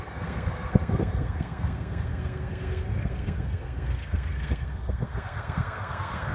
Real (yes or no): no